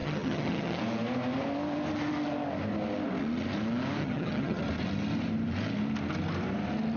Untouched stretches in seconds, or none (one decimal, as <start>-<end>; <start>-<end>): 0.8-4.0; 4.6-7.0